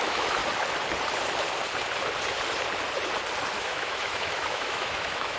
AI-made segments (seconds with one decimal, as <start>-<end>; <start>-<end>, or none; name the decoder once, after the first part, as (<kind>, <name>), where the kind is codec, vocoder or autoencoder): 0.0-0.4 (autoencoder, DAC-VAE); 3.6-5.4